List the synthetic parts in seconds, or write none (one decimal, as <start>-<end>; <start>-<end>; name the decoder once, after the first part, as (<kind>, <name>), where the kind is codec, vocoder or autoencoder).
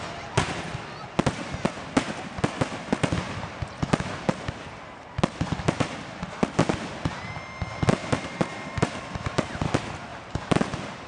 8.0-9.7 (vocoder, BigVGAN v2); 10.1-10.6